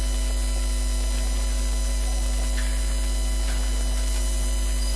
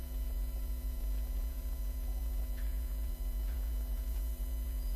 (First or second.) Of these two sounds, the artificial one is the second